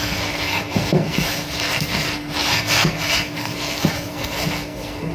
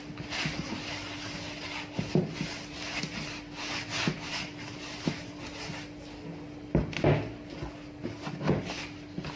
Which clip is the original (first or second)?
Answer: second